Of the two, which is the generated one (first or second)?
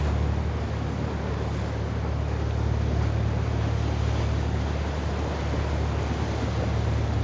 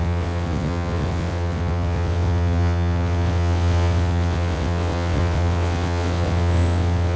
second